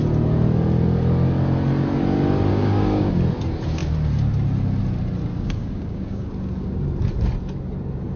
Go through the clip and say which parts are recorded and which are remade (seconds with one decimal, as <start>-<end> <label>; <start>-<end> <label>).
0.0-2.5 recorded; 2.5-3.1 remade; 3.1-5.3 recorded; 5.3-6.3 remade; 6.3-8.2 recorded